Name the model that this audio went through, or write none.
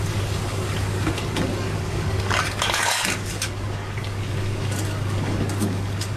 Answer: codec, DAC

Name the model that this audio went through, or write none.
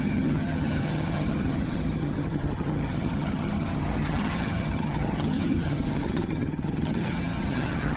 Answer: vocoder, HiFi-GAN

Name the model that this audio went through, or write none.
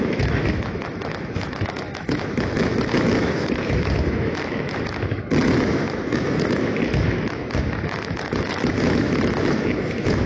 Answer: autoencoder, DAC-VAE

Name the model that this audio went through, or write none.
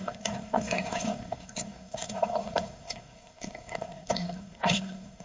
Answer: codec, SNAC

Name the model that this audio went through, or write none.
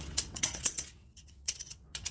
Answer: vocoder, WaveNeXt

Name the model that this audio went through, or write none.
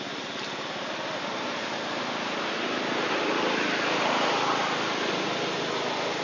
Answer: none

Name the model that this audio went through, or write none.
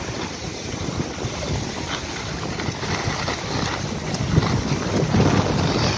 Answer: none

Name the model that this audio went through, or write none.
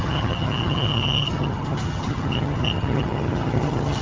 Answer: vocoder, HiFi-GAN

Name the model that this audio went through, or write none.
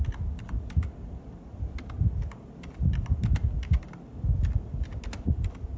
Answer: none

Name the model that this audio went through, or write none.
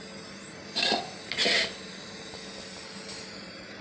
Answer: none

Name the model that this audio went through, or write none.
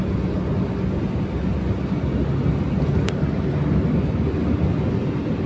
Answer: none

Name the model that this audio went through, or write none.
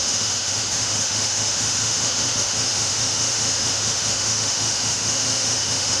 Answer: autoencoder, DAC-VAE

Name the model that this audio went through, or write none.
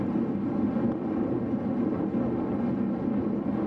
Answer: none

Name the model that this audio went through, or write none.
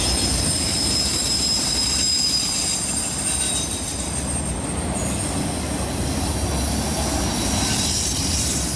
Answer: none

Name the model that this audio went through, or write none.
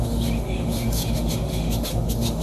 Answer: autoencoder, DAC-VAE